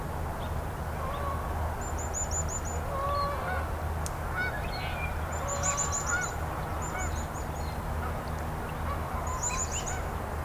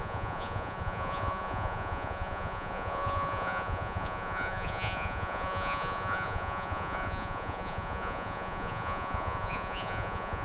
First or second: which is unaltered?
first